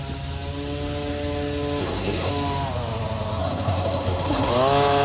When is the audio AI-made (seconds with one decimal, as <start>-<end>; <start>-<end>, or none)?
1.8-2.3; 3.4-4.5